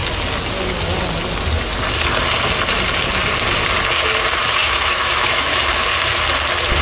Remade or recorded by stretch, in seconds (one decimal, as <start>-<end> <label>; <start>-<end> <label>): 0.0-4.6 recorded; 4.6-5.9 remade; 5.9-6.8 recorded